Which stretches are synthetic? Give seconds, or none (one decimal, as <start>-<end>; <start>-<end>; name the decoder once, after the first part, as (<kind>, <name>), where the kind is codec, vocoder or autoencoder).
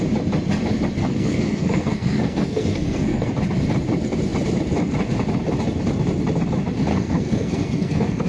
1.0-3.3 (codec, SNAC); 6.9-8.3